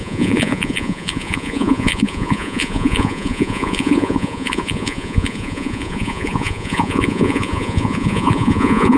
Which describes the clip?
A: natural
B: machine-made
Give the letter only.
B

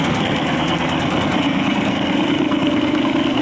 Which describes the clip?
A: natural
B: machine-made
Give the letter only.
B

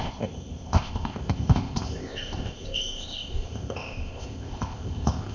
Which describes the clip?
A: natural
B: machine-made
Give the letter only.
B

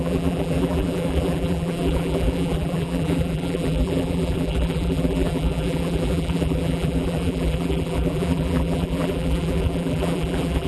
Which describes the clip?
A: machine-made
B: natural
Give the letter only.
A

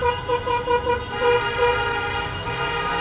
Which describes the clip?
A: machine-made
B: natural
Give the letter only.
B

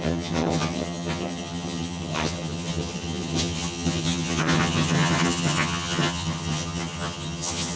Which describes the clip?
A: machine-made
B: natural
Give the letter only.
A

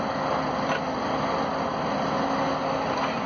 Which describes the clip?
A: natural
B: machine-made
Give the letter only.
A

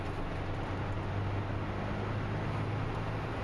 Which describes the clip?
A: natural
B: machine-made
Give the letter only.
A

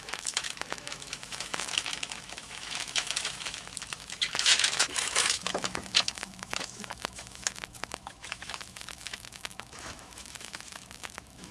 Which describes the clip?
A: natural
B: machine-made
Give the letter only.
B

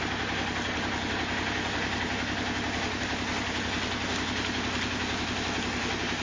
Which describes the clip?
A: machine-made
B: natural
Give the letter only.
B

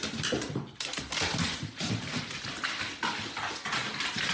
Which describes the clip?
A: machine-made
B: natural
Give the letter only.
A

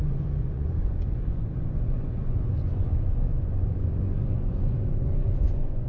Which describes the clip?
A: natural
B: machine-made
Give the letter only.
B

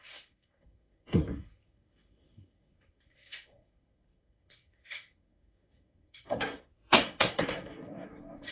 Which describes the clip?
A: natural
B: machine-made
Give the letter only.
B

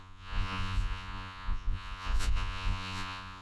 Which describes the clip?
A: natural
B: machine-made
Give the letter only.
B